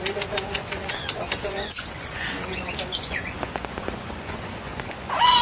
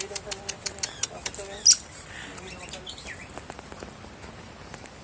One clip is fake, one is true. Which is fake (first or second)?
first